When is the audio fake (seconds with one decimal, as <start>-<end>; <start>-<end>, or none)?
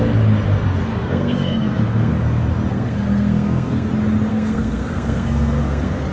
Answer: 0.9-2.1; 2.7-3.9; 4.3-6.1